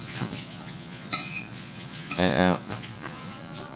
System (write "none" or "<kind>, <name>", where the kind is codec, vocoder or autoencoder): vocoder, Vocos